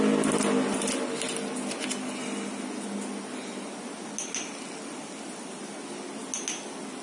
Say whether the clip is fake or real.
real